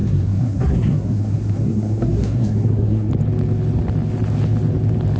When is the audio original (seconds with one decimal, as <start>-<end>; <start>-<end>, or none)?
3.1-5.2